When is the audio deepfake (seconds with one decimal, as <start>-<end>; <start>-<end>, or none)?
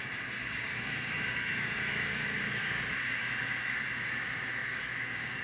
0.4-2.8; 4.6-5.4